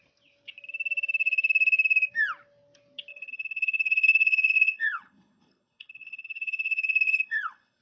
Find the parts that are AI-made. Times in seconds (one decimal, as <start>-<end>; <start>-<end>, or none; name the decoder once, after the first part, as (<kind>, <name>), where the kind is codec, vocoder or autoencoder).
3.1-7.8 (codec, HILCodec)